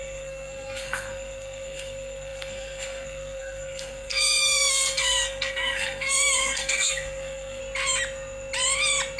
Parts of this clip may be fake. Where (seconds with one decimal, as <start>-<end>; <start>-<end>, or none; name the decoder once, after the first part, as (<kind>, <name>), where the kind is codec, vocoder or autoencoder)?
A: 0.0-7.6 (codec, SNAC)